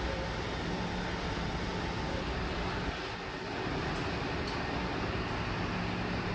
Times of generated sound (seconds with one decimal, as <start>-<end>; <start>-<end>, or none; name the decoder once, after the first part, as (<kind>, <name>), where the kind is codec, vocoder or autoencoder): none

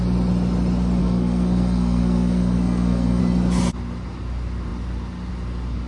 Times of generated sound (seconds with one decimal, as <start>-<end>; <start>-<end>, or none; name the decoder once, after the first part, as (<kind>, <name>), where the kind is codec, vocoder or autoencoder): 1.0-3.2 (codec, SNAC)

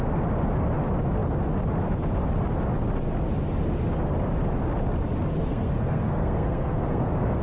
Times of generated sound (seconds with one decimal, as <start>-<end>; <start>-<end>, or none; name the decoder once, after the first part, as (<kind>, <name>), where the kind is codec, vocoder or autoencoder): 5.4-7.4 (codec, SNAC)

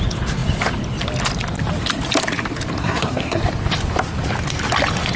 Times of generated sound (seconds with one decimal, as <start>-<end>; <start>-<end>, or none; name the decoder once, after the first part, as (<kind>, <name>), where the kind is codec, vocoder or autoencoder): 2.8-3.4 (codec, SNAC)